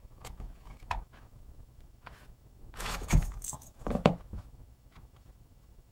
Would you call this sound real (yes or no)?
no